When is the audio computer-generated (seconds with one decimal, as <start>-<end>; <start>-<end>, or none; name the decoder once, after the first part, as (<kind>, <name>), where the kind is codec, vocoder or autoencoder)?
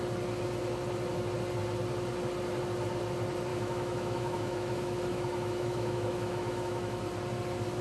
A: 3.5-7.0 (autoencoder, DAC-VAE)